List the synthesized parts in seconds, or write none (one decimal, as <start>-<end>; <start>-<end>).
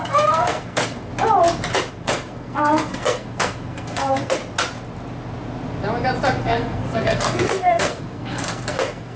0.0-1.1; 1.9-4.4; 6.4-9.2